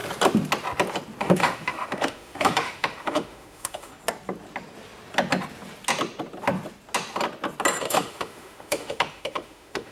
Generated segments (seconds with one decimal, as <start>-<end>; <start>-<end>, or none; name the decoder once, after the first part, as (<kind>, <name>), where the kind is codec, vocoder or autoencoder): 1.2-3.9 (autoencoder, DAC-VAE); 7.8-9.9